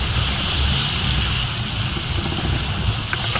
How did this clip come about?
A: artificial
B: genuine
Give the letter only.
B